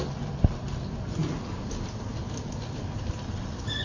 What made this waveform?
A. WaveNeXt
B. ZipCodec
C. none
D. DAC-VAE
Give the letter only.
C